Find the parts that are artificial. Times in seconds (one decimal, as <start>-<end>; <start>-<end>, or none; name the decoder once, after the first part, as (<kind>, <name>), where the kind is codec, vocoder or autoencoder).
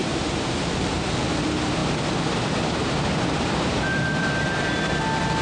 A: 0.0-1.0 (vocoder, BigVGAN v2); 2.8-4.7